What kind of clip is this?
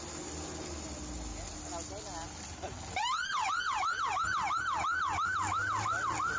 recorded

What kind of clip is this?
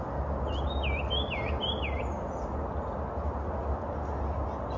recorded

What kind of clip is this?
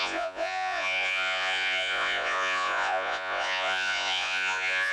remade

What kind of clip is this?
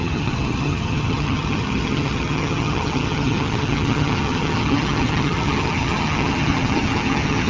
remade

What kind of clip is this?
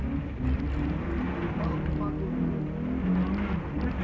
recorded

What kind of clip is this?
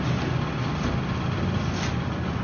recorded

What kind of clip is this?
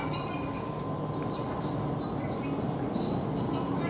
recorded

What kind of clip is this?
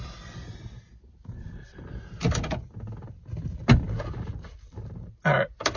recorded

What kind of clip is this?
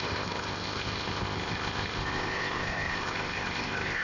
remade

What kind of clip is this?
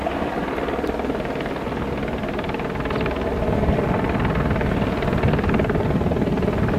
recorded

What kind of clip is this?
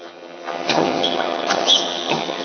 remade